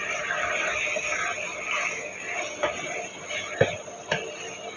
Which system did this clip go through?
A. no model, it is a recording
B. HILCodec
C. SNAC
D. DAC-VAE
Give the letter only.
A